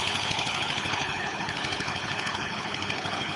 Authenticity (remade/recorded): remade